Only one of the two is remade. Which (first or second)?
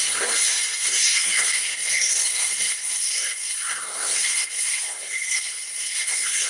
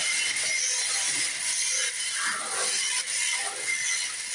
first